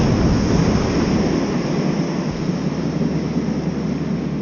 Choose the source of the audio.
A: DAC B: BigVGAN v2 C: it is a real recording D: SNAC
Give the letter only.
C